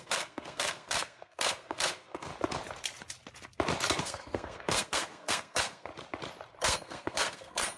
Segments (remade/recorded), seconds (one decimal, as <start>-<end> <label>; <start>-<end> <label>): 0.0-2.3 remade; 2.3-4.0 recorded; 4.0-5.9 remade; 5.9-6.6 recorded; 6.6-7.8 remade